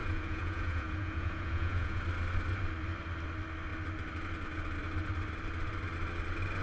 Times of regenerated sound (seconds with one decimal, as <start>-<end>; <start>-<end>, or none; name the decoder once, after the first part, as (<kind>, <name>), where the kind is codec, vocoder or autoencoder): 0.0-2.0 (vocoder, Vocos)